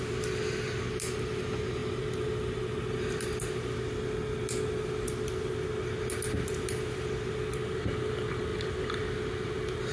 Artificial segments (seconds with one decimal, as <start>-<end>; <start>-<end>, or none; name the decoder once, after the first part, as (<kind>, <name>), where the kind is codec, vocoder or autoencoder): none